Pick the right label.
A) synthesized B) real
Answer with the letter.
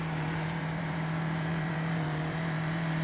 A